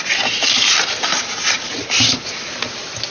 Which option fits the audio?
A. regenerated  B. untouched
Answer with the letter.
B